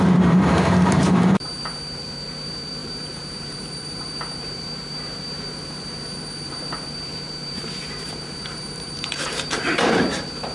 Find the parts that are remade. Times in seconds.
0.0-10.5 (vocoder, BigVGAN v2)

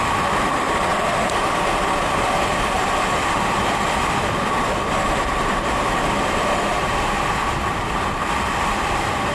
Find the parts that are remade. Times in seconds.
none

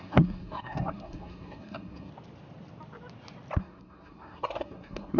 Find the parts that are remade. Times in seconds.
0.0-2.1 (codec, SNAC); 3.6-5.2

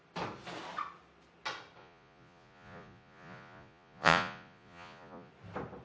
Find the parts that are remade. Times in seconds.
1.8-5.3 (vocoder, Vocos)

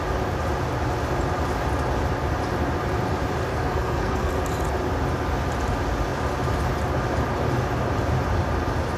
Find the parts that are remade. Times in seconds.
3.5-4.3 (codec, SNAC)

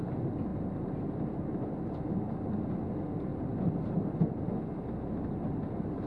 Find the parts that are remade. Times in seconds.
none